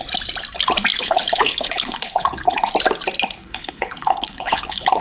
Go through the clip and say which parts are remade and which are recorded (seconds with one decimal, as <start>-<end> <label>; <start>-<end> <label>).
0.0-0.9 recorded; 0.9-2.7 remade; 2.7-3.4 recorded; 3.4-5.0 remade